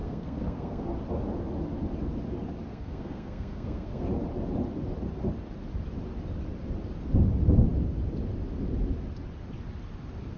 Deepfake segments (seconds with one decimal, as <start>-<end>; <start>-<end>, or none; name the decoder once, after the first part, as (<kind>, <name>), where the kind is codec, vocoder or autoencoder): 0.0-0.8 (codec, SNAC); 2.7-4.1